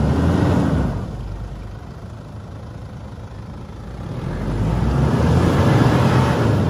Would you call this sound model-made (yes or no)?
no